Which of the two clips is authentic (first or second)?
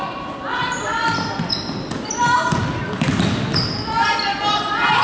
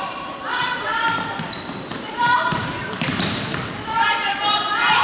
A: first